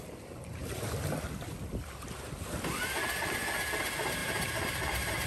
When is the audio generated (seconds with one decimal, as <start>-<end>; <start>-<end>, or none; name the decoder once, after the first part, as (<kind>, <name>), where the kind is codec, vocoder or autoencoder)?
4.2-5.3 (vocoder, BigVGAN v2)